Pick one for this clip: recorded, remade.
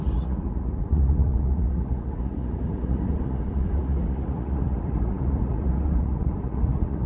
remade